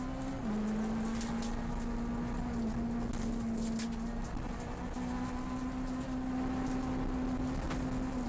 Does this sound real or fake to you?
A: real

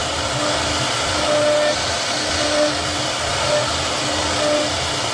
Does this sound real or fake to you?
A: real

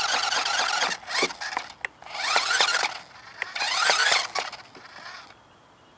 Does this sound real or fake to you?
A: real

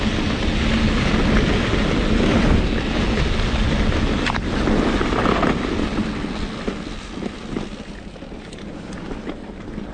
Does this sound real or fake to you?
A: real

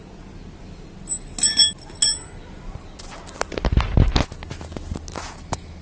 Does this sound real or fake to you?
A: real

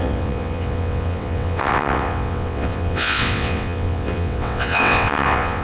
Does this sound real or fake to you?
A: fake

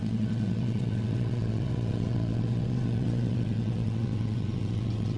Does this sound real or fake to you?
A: fake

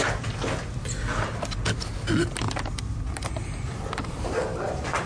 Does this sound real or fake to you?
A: real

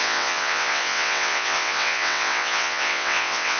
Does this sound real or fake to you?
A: fake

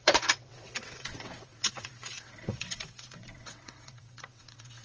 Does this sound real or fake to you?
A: fake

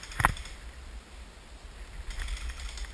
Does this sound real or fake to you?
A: real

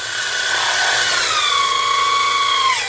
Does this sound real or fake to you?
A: fake